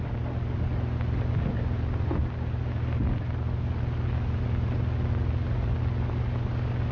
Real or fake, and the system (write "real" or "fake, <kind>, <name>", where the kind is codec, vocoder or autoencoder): real